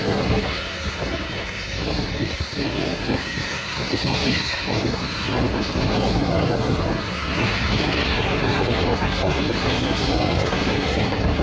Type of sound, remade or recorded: remade